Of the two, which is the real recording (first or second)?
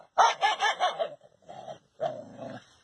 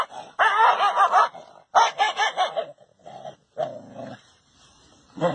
second